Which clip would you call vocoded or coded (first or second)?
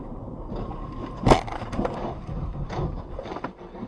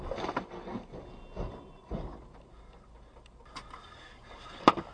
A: first